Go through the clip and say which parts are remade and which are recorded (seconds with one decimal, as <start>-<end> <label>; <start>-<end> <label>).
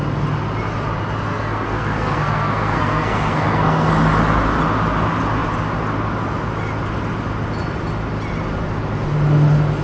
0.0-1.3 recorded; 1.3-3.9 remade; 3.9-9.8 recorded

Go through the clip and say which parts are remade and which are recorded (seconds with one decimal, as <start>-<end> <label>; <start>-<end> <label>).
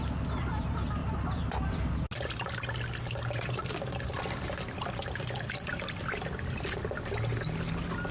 0.0-8.1 recorded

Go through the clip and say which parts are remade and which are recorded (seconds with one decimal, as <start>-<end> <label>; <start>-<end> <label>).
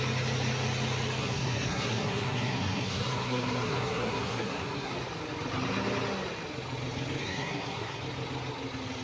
0.0-1.2 recorded; 1.2-4.9 remade; 4.9-7.2 recorded; 7.2-8.0 remade; 8.0-9.0 recorded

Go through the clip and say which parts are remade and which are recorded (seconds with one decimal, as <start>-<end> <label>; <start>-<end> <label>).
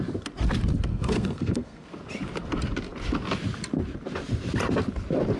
0.0-0.9 recorded; 0.9-1.9 remade; 1.9-5.4 recorded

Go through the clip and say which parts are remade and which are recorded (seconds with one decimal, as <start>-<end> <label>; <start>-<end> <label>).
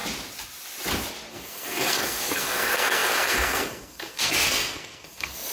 0.0-1.3 recorded; 1.3-5.5 remade